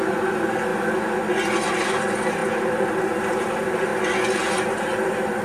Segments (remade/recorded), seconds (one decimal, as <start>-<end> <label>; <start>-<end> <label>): 0.0-0.7 remade; 0.7-1.3 recorded; 1.3-3.9 remade; 3.9-4.4 recorded; 4.4-5.4 remade